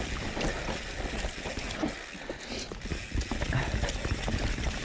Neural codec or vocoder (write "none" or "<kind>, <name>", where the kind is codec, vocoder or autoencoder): none